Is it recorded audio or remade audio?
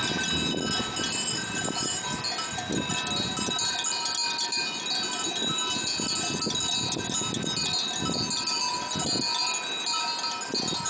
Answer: recorded